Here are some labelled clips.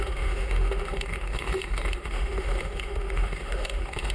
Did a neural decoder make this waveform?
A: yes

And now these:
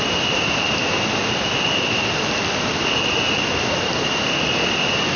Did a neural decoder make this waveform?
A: no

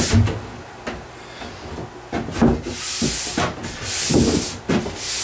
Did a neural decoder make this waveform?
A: no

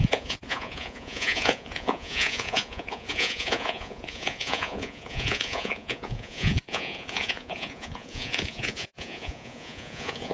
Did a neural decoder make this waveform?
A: yes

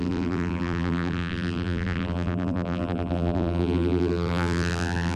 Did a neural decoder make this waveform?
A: yes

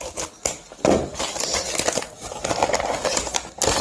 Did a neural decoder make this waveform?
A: no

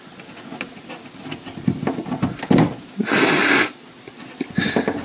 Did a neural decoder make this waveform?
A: no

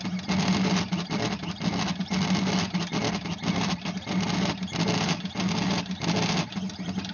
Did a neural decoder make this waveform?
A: no